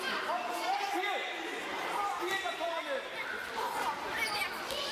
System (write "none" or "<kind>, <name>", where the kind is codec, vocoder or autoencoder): none